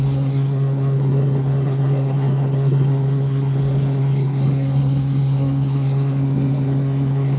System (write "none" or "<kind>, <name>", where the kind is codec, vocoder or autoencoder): codec, SNAC